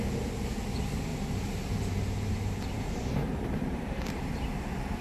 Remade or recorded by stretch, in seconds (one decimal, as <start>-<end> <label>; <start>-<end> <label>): 0.0-1.1 remade; 1.1-1.7 recorded; 1.7-5.0 remade